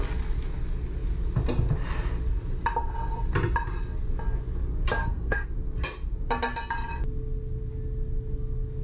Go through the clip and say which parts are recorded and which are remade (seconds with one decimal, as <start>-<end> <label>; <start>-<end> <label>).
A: 0.0-5.0 recorded; 5.0-5.5 remade; 5.5-8.8 recorded

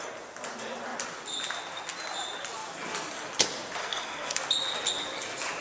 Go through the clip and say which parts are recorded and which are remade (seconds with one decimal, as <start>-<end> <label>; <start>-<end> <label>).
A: 0.0-3.8 recorded; 3.8-4.4 remade; 4.4-5.6 recorded

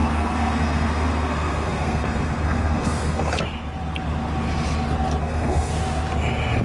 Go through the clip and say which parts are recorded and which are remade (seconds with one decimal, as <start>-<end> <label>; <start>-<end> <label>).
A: 0.0-3.4 remade; 3.4-5.2 recorded; 5.2-5.7 remade; 5.7-6.6 recorded

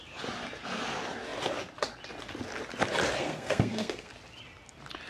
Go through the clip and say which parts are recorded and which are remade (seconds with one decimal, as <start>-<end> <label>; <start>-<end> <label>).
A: 0.0-3.2 recorded; 3.2-4.1 remade; 4.1-5.1 recorded